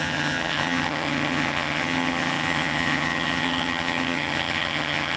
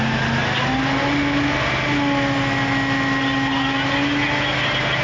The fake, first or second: first